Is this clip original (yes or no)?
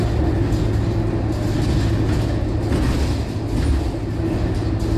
yes